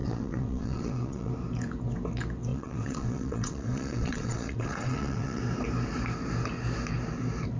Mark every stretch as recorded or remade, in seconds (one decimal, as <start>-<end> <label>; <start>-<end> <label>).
0.0-1.3 remade; 1.3-2.5 recorded; 2.5-5.4 remade; 5.4-7.6 recorded